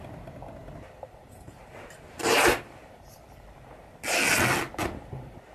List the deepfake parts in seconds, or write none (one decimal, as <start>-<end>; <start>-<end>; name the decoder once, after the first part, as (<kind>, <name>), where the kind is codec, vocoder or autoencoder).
0.6-3.9 (vocoder, BigVGAN v2)